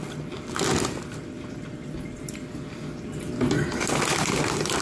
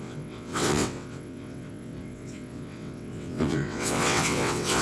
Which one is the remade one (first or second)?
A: second